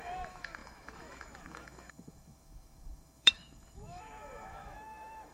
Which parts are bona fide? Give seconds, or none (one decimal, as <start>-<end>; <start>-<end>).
none